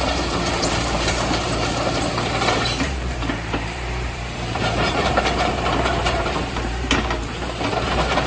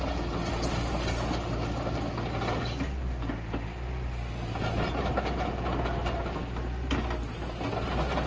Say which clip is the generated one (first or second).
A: first